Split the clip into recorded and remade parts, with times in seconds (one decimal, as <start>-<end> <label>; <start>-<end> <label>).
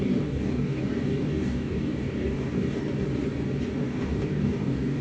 0.0-2.8 remade; 2.8-3.8 recorded; 3.8-5.0 remade